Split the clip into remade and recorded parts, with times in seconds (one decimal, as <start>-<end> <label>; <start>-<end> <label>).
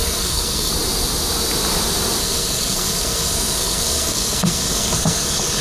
0.0-0.7 remade; 0.7-2.2 recorded; 2.2-5.6 remade